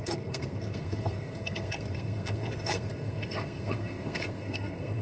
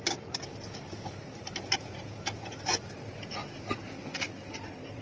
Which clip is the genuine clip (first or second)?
second